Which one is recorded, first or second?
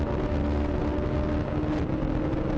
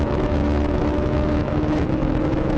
first